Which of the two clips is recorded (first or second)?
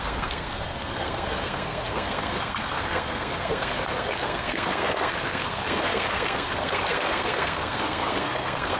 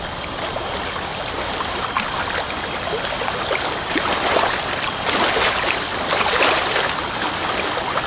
second